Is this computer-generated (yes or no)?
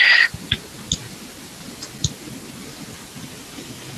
no